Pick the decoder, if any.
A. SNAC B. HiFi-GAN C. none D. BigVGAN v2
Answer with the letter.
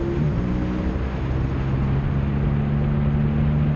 C